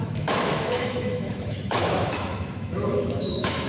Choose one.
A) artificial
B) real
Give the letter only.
A